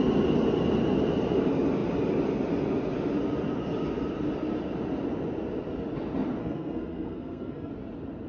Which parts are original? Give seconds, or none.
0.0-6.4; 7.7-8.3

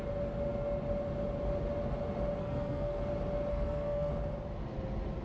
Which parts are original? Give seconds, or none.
0.0-2.4; 3.0-3.5; 4.1-5.2

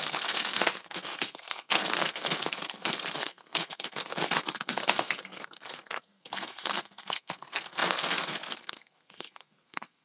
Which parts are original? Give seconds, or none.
none

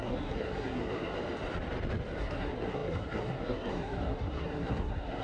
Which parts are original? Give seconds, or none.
1.1-2.2

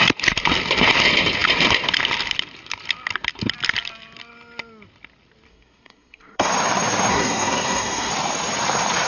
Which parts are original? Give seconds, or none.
0.0-5.5; 6.5-7.1; 8.1-9.1

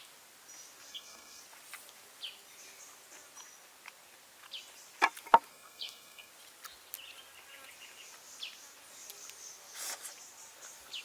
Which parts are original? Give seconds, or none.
0.0-0.9; 1.4-5.5; 6.3-11.0